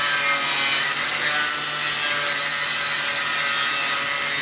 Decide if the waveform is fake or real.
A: real